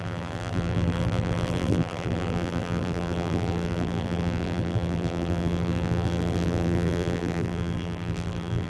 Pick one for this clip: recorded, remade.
remade